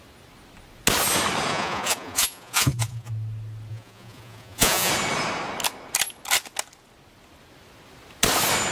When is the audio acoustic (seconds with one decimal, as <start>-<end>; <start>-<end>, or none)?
0.0-1.5; 3.1-3.7; 4.9-8.7